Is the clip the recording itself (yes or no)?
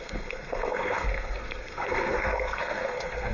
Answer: no